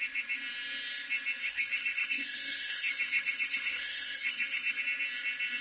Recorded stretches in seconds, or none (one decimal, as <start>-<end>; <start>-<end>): 0.0-1.4; 4.8-5.6